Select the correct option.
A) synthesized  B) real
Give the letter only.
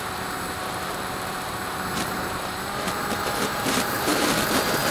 A